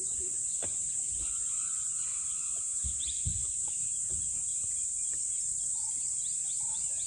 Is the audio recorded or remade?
remade